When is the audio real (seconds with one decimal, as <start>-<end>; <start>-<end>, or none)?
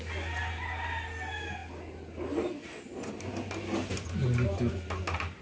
0.0-5.4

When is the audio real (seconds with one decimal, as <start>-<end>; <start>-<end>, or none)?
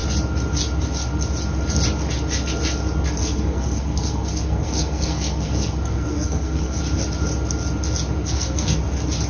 0.0-3.2; 6.8-8.2; 8.8-9.3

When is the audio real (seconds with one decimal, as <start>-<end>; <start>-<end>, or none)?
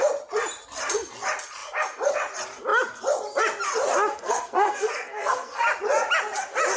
0.0-4.1; 5.6-6.8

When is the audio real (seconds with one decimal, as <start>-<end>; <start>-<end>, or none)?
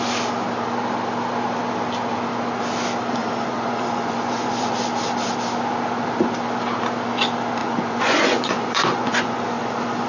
0.0-3.2; 4.7-7.6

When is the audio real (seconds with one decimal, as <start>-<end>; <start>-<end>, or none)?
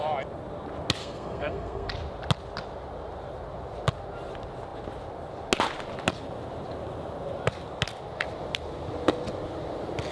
0.0-1.0; 1.9-10.1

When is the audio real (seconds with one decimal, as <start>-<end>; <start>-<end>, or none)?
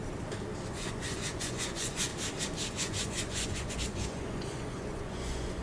0.0-0.7; 2.1-2.7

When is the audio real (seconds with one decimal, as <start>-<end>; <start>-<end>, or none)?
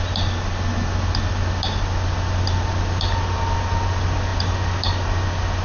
0.0-5.6